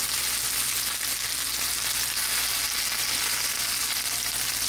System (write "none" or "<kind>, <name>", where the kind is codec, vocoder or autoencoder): none